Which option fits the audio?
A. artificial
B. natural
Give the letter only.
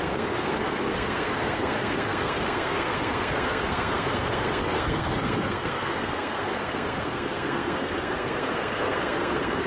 A